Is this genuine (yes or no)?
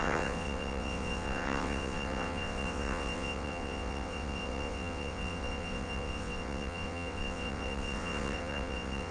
no